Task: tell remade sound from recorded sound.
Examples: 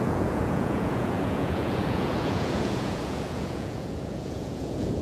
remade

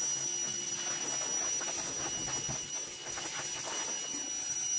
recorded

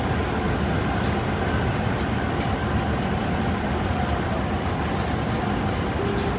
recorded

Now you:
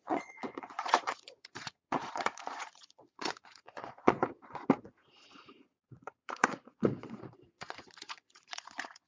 remade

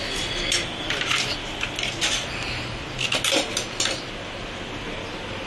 recorded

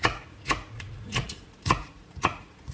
remade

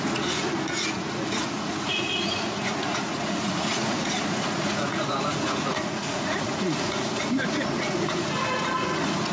remade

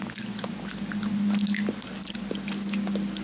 recorded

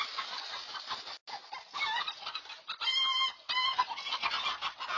recorded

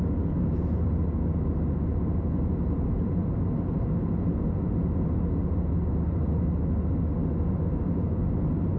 recorded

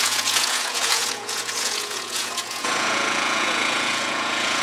remade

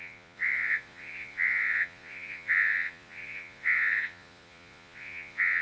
remade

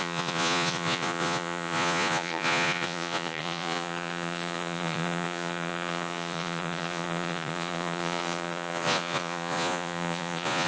remade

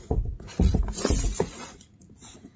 remade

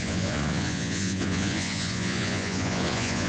remade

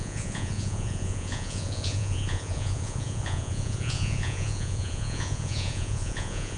remade